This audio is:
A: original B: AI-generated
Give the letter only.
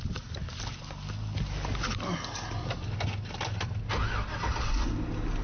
A